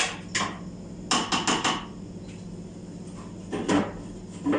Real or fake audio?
real